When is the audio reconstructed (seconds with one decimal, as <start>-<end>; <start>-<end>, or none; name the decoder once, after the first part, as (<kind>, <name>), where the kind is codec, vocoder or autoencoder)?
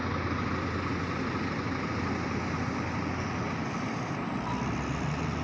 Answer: none